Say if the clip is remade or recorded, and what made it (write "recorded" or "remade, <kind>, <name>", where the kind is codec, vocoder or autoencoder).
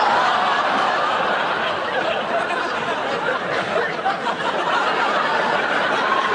recorded